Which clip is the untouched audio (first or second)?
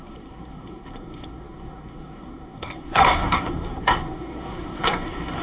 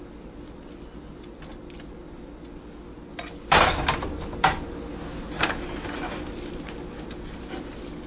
second